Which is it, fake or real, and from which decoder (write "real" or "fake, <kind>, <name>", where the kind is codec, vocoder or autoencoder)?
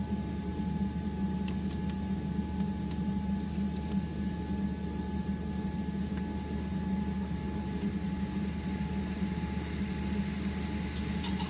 real